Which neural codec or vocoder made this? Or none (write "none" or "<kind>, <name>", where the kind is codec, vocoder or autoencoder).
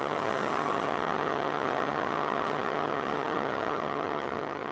vocoder, HiFi-GAN